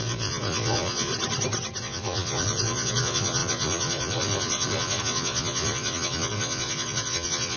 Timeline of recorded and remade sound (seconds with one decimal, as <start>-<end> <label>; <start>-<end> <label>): 0.0-1.1 remade; 1.1-1.8 recorded; 1.8-7.6 remade